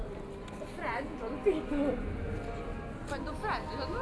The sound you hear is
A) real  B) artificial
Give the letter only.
A